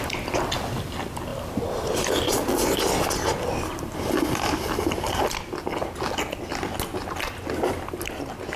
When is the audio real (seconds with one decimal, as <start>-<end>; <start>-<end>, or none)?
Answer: 0.0-8.6